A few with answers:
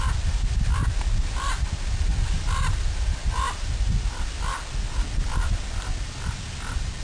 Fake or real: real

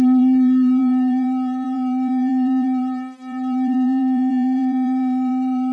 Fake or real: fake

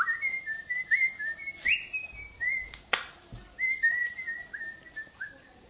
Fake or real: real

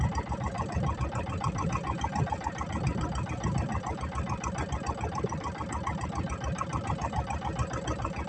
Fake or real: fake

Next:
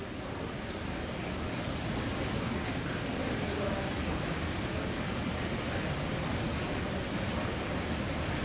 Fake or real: real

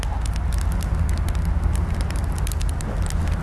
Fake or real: real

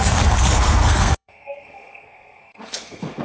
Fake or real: fake